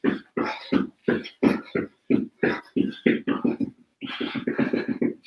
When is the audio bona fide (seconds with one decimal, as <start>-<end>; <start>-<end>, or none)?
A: 0.0-3.9; 4.5-5.3